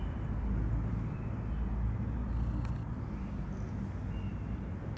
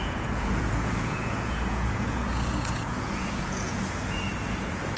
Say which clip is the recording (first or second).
first